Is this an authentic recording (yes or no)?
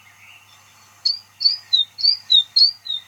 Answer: yes